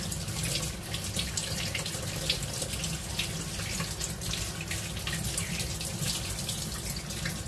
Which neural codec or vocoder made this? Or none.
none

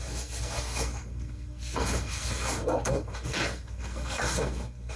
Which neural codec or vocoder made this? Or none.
codec, SNAC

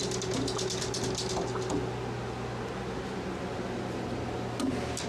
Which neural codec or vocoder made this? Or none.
none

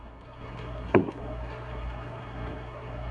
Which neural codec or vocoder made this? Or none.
codec, SNAC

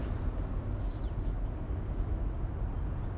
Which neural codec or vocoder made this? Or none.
none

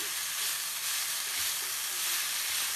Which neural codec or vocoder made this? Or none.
none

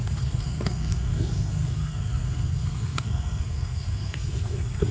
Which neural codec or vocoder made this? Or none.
codec, SNAC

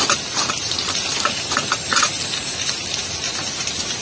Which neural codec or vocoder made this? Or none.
none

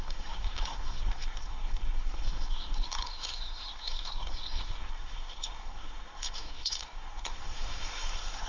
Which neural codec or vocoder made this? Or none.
codec, SNAC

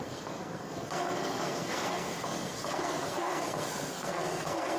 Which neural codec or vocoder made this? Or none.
codec, SNAC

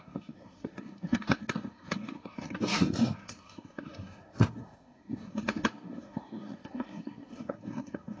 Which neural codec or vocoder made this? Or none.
codec, SNAC